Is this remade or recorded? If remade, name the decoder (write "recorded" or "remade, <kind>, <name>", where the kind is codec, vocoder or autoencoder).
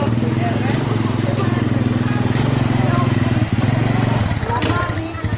recorded